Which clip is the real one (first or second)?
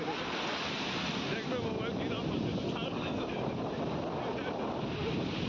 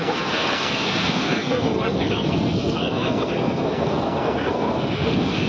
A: first